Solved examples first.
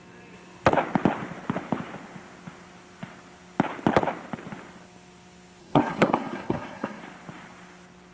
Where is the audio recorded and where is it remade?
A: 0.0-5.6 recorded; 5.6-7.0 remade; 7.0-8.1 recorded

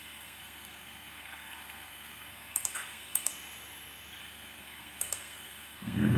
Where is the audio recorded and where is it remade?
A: 0.0-3.3 remade; 3.3-4.2 recorded; 4.2-6.2 remade